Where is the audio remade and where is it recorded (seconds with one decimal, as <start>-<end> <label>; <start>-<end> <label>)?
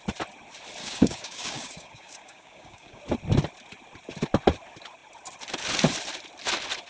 0.0-0.8 recorded; 0.8-3.0 remade; 3.0-6.9 recorded